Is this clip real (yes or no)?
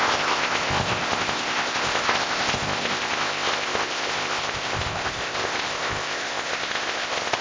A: no